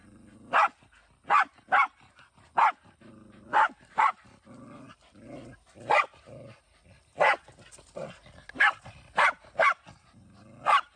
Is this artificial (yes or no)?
no